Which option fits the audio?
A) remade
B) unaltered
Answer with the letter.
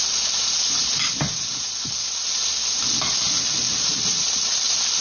B